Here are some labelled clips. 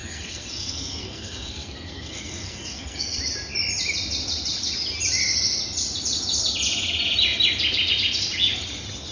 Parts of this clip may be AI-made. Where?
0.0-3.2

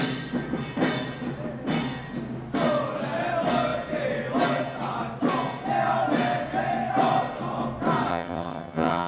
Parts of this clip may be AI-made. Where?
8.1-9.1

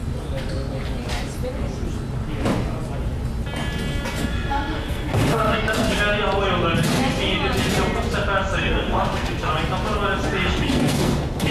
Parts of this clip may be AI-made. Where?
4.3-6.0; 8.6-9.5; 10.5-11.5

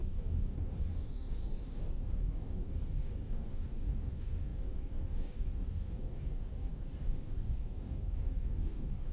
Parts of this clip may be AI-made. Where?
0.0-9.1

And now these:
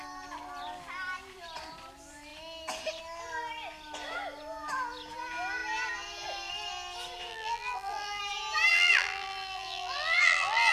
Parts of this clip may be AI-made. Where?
7.3-8.2; 8.7-10.7

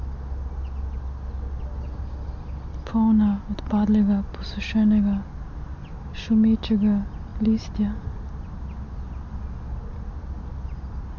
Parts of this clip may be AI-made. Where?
none

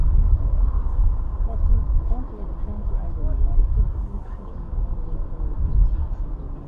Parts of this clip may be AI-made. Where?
0.0-1.0; 1.7-2.3; 2.7-4.8

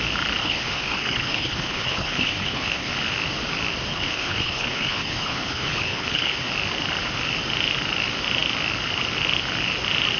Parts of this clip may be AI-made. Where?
0.4-2.9; 3.9-6.5